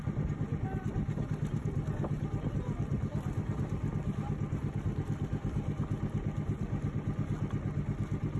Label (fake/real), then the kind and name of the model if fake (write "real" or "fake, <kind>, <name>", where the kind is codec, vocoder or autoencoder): real